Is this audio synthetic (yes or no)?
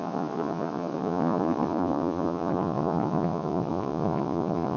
yes